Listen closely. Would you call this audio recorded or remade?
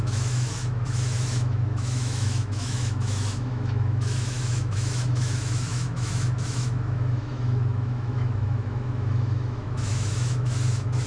remade